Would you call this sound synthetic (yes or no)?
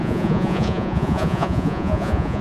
yes